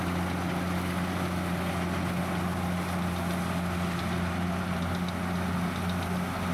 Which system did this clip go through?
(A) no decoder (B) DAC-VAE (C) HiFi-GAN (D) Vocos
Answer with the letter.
A